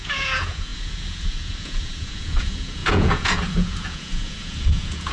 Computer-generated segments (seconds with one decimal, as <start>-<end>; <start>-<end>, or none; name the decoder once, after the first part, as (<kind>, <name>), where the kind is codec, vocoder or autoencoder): 0.0-5.1 (vocoder, Vocos)